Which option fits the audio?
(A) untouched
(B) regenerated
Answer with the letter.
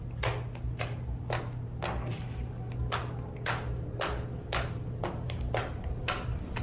A